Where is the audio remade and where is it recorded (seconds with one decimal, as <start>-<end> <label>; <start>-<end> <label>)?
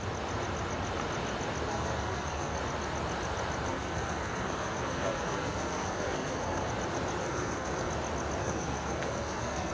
0.0-1.7 recorded; 1.7-2.6 remade; 2.6-3.7 recorded; 3.7-6.7 remade; 6.7-7.2 recorded; 7.2-7.9 remade; 7.9-8.4 recorded; 8.4-9.7 remade